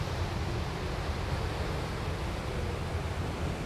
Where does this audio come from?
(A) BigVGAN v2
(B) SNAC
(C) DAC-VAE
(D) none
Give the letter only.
D